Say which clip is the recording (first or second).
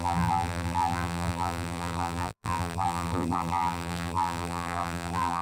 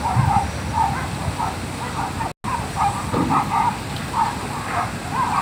second